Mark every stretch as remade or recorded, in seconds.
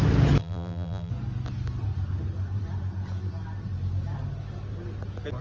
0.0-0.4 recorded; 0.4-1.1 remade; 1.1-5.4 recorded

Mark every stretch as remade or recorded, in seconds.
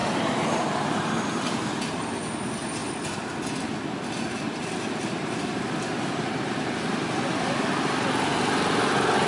0.0-1.7 remade; 1.7-9.3 recorded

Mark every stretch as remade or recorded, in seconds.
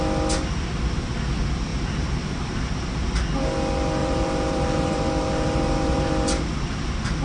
0.0-4.0 recorded; 4.0-6.1 remade; 6.1-7.2 recorded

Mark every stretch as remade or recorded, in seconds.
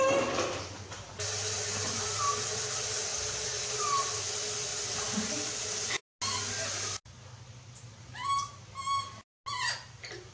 0.0-10.3 recorded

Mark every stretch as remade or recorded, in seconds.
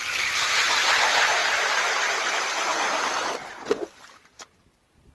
0.0-1.4 recorded; 1.4-4.5 remade; 4.5-5.1 recorded